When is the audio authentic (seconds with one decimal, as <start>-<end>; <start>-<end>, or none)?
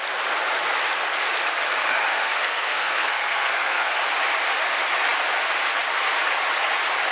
0.0-2.1; 4.0-7.1